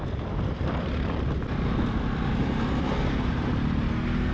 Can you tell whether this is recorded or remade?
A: recorded